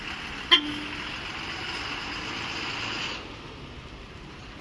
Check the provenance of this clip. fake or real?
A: real